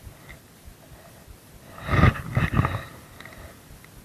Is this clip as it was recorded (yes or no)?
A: yes